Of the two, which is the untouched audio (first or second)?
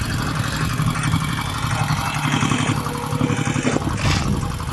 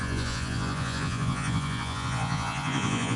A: first